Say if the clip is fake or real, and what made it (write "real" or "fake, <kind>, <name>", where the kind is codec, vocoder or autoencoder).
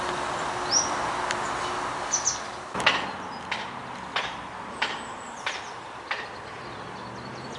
real